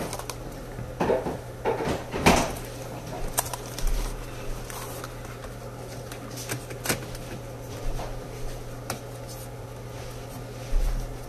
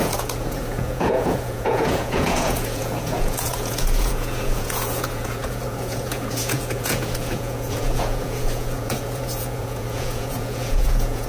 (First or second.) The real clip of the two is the first